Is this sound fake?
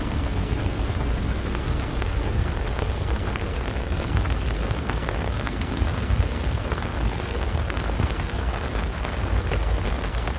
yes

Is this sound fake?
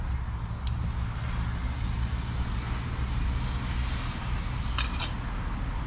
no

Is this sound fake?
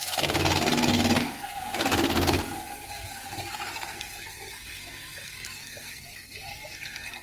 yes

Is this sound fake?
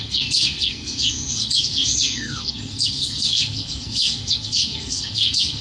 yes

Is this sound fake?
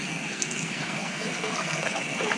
yes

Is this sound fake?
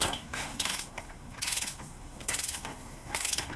yes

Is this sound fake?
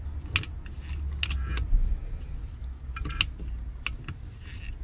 no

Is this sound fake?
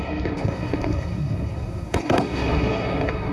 yes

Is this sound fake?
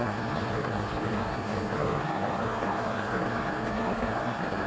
yes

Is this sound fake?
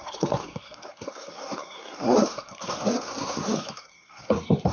yes